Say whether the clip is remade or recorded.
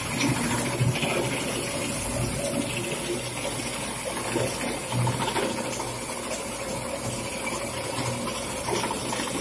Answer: recorded